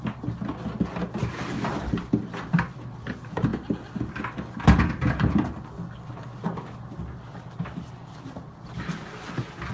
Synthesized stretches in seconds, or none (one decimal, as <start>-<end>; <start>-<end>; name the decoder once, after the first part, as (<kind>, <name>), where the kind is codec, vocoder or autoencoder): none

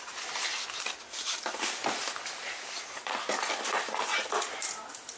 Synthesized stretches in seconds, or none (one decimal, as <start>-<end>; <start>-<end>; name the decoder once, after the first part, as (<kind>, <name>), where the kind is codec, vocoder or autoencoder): none

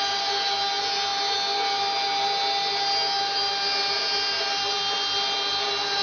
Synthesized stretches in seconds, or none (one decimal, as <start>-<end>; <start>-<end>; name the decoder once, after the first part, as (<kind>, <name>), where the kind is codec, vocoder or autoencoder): none